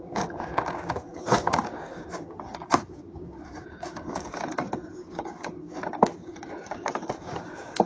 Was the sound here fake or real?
fake